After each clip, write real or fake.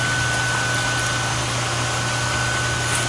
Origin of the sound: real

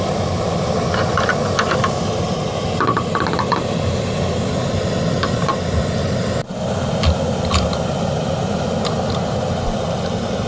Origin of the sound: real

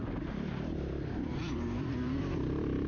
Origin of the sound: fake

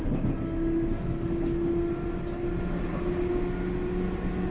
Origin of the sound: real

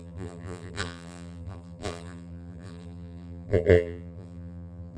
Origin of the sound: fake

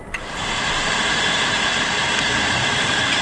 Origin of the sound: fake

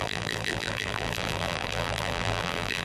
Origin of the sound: fake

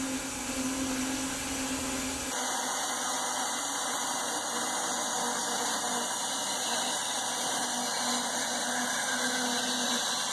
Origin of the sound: real